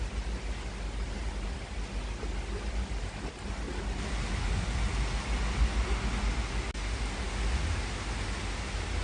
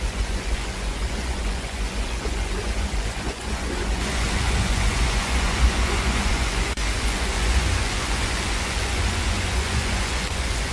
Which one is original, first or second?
first